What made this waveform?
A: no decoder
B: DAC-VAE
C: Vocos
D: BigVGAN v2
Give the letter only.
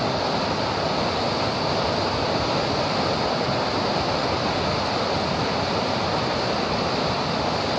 D